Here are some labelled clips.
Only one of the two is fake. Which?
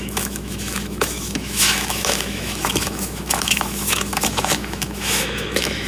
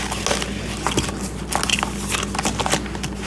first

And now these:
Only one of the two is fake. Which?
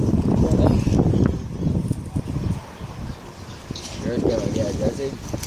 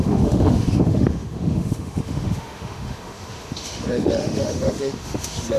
second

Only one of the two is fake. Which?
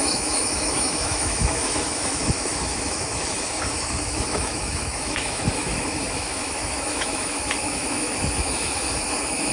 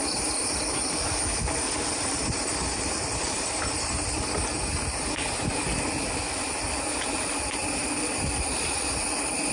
first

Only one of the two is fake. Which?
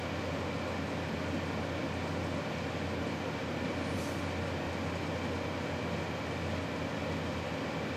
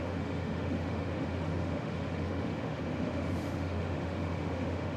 second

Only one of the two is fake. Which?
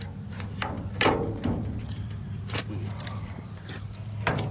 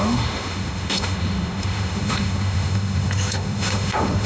second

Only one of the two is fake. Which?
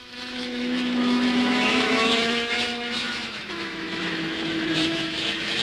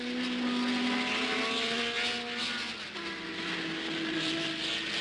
first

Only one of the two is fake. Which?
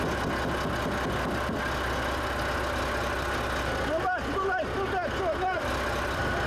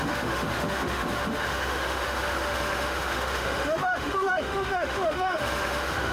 second